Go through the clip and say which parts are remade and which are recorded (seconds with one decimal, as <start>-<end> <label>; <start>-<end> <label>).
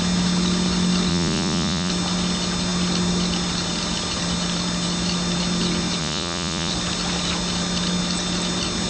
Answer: 0.0-1.1 recorded; 1.1-1.9 remade; 1.9-6.0 recorded; 6.0-6.7 remade; 6.7-8.9 recorded